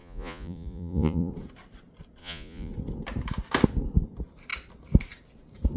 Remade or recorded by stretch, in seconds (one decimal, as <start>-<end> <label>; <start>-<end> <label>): 0.0-1.3 remade; 1.3-2.2 recorded; 2.2-2.7 remade; 2.7-5.8 recorded